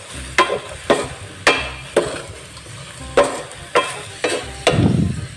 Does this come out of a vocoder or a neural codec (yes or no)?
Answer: no